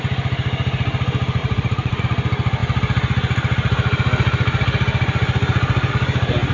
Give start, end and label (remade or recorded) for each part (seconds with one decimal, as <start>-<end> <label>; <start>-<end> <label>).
0.0-1.4 recorded; 1.4-2.0 remade; 2.0-6.5 recorded